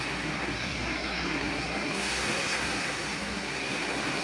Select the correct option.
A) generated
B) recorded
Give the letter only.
A